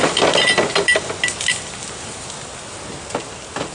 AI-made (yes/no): no